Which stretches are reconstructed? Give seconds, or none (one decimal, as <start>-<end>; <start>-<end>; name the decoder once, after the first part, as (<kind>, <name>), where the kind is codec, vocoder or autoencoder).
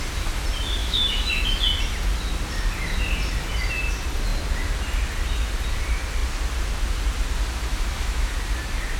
0.8-1.6 (autoencoder, DAC-VAE); 7.7-8.3